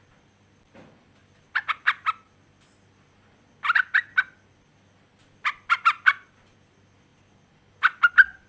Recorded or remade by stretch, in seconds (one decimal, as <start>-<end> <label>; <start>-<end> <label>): 0.0-1.2 remade; 1.2-4.7 recorded; 4.7-7.1 remade; 7.1-8.1 recorded; 8.1-8.5 remade

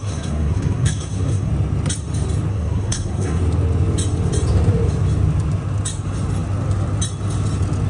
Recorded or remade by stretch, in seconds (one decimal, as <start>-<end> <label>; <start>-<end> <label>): 0.0-1.5 remade; 1.5-2.5 recorded; 2.5-3.4 remade; 3.4-7.9 recorded

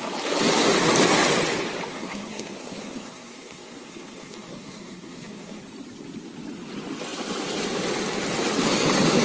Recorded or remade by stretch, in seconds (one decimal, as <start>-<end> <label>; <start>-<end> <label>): 0.0-1.9 recorded; 1.9-5.6 remade; 5.6-9.2 recorded